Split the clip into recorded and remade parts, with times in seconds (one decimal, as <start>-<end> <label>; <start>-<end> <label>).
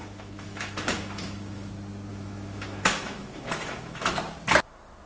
0.0-1.7 remade; 1.7-2.1 recorded; 2.1-4.1 remade; 4.1-5.1 recorded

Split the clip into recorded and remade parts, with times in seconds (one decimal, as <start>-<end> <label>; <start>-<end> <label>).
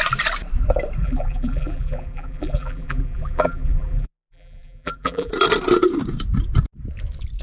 0.0-1.0 recorded; 1.0-5.3 remade; 5.3-7.4 recorded